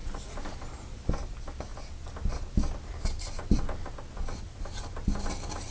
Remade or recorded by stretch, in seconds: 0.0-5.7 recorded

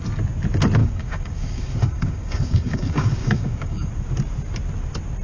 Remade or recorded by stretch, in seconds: 0.0-0.8 recorded; 0.8-3.9 remade; 3.9-5.2 recorded

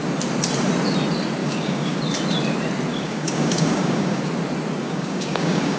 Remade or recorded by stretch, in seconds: 0.0-1.4 recorded; 1.4-2.0 remade; 2.0-2.9 recorded; 2.9-4.2 remade; 4.2-4.8 recorded; 4.8-5.8 remade

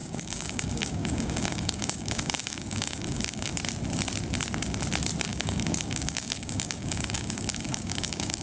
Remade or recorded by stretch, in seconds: 0.0-3.6 remade; 3.6-5.3 recorded; 5.3-8.4 remade

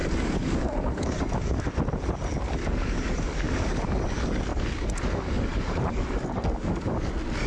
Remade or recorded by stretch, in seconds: 0.0-1.6 remade; 1.6-2.6 recorded; 2.6-3.7 remade; 3.7-4.5 recorded; 4.5-7.1 remade; 7.1-7.5 recorded

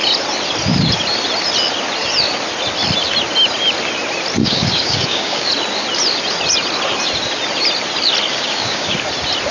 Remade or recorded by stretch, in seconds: 0.0-4.4 recorded; 4.4-5.5 remade; 5.5-8.3 recorded; 8.3-8.9 remade; 8.9-9.5 recorded